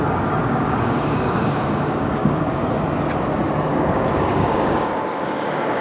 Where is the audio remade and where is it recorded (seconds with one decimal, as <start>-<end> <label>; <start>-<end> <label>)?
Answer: 0.0-0.4 recorded; 0.4-2.6 remade; 2.6-3.7 recorded; 3.7-5.8 remade